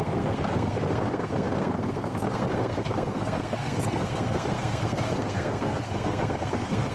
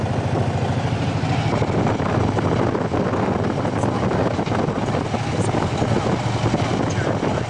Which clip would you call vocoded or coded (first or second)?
first